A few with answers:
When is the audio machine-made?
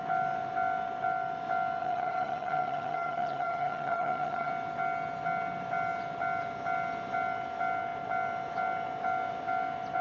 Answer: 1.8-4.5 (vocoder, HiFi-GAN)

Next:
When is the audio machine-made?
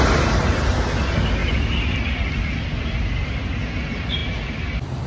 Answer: none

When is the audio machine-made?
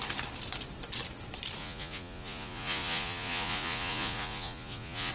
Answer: 1.6-5.1 (vocoder, Vocos)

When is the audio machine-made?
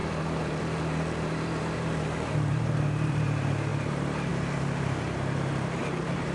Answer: 0.6-6.3 (vocoder, BigVGAN v2)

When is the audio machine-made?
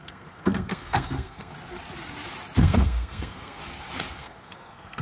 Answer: 0.0-1.5 (codec, SNAC); 2.6-3.6; 4.1-5.0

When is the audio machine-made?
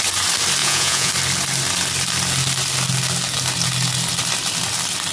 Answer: 0.6-1.1 (vocoder, Vocos)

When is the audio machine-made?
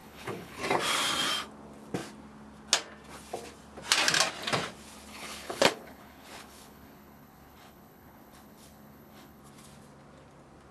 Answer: 0.0-0.6 (codec, HILCodec); 5.1-9.4